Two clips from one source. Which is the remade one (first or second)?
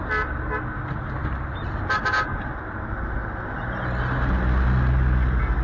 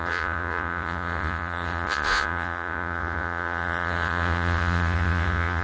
second